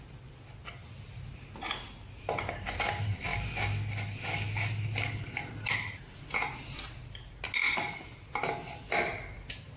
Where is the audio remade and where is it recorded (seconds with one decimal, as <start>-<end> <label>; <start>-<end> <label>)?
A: 0.0-9.8 recorded

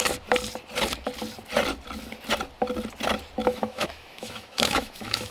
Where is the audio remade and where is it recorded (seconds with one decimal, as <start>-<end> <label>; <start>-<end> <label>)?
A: 0.0-3.4 recorded; 3.4-5.3 remade

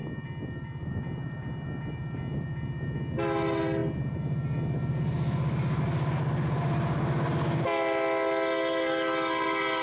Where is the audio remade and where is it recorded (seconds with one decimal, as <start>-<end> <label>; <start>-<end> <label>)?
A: 0.0-9.8 recorded

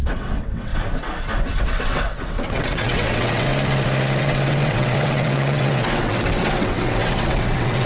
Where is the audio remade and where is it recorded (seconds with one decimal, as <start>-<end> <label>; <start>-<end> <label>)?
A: 0.0-0.7 remade; 0.7-1.6 recorded; 1.6-3.5 remade; 3.5-4.2 recorded; 4.2-7.9 remade

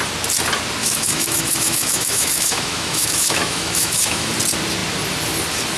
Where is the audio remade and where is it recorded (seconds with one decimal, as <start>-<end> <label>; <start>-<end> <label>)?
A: 0.0-0.8 recorded; 0.8-4.3 remade; 4.3-5.8 recorded

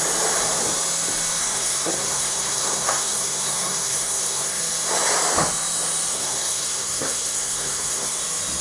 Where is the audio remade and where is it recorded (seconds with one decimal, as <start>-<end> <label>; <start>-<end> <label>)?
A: 0.0-1.4 recorded; 1.4-4.6 remade; 4.6-6.1 recorded; 6.1-8.2 remade; 8.2-8.6 recorded